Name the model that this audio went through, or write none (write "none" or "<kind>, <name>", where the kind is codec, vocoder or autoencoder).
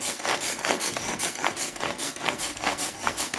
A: codec, SNAC